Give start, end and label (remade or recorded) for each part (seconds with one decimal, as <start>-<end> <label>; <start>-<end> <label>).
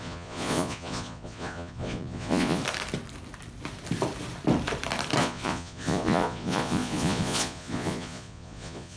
0.0-2.6 remade; 2.6-5.2 recorded; 5.2-9.0 remade